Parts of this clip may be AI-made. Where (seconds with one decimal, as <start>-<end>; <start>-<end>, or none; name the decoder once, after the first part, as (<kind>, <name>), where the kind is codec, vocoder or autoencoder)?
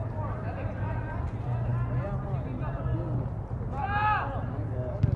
none